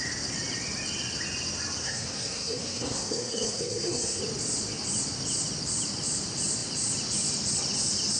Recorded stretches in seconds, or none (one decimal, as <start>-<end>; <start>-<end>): 0.0-1.8; 4.2-8.2